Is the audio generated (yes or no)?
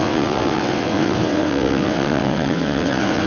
yes